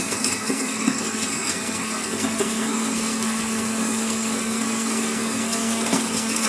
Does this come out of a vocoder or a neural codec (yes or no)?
yes